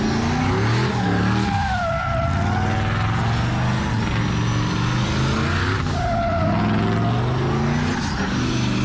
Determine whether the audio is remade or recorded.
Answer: recorded